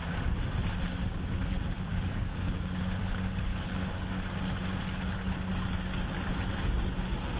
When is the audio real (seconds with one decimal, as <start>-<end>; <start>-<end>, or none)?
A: 0.0-1.9; 3.0-3.5; 4.2-7.4